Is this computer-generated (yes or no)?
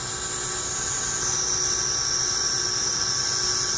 no